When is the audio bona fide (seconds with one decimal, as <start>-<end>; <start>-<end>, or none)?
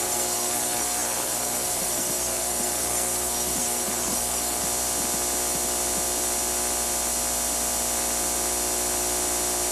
4.6-9.7